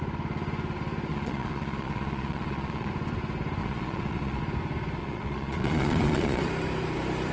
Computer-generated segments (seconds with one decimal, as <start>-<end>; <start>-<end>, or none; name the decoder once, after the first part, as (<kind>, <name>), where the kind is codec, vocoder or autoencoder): 1.1-2.9 (vocoder, Vocos); 3.6-4.4; 5.0-6.4